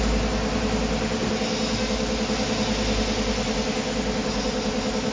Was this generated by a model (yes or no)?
no